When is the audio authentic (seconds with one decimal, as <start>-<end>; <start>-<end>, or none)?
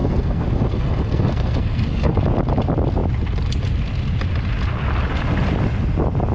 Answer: 2.2-6.3